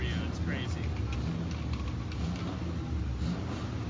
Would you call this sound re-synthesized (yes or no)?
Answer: no